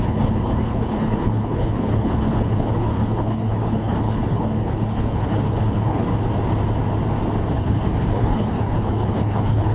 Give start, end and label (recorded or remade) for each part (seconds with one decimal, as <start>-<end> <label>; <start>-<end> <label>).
0.0-6.1 remade; 6.1-7.5 recorded; 7.5-9.7 remade